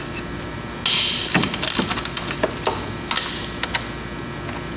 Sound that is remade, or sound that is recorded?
recorded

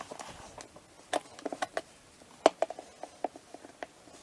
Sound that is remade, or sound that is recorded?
recorded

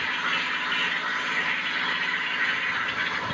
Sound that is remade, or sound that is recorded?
recorded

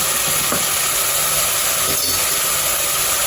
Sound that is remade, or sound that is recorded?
recorded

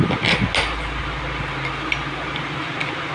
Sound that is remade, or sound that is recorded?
recorded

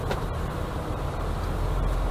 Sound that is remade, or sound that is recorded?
recorded